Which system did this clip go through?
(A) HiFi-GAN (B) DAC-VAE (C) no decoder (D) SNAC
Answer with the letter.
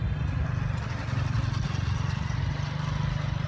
C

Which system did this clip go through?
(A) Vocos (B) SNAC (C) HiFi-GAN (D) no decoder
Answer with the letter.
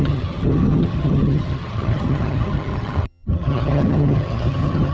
C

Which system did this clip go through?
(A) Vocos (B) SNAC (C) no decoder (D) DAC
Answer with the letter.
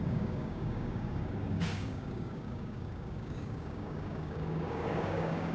D